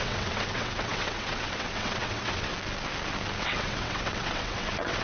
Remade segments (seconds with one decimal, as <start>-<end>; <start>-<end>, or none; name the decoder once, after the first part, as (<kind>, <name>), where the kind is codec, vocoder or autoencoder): 0.0-2.5 (vocoder, WaveNeXt); 3.4-5.0